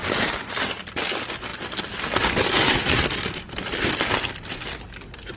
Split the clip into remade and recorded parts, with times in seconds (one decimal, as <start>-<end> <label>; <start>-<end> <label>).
0.0-5.4 recorded